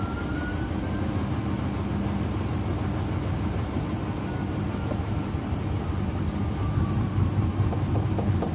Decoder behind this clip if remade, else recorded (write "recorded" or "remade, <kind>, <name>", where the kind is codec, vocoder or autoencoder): recorded